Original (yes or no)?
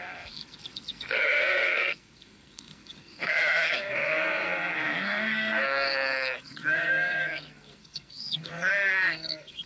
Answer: no